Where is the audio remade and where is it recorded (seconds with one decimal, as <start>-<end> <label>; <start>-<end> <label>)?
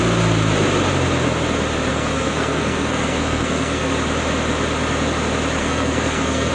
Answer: 0.0-1.9 recorded; 1.9-3.9 remade; 3.9-5.6 recorded; 5.6-6.5 remade